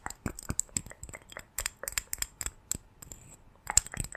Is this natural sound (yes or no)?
yes